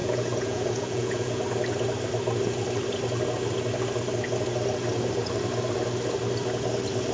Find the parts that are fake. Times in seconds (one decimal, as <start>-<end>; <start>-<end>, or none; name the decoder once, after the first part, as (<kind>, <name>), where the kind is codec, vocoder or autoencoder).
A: 0.0-1.4 (vocoder, Vocos)